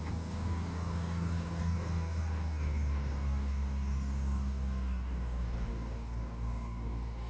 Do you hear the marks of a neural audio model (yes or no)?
yes